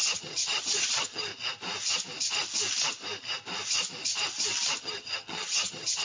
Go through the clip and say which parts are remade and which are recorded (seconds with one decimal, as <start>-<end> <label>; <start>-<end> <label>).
0.0-1.3 remade; 1.3-4.8 recorded; 4.8-6.0 remade